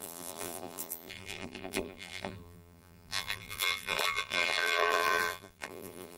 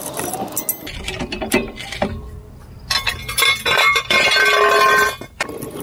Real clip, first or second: second